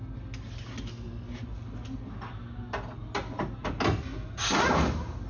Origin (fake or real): real